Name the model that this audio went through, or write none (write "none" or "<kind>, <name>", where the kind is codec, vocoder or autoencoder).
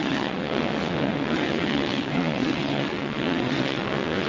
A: vocoder, WaveNeXt